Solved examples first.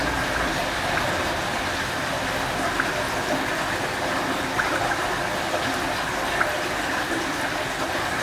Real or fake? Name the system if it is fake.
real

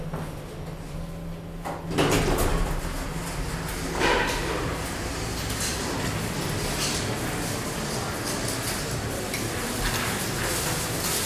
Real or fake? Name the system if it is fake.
real